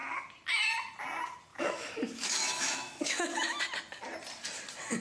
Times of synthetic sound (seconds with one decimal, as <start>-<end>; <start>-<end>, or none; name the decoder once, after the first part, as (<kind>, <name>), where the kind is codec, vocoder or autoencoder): 1.5-3.6 (autoencoder, DAC-VAE)